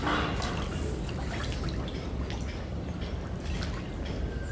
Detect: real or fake real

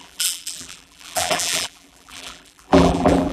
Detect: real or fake fake